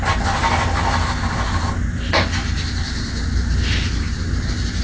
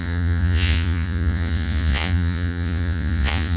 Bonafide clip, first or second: first